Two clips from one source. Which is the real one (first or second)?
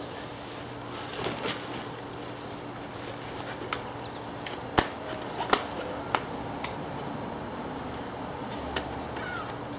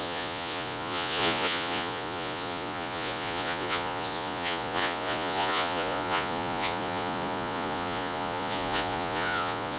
first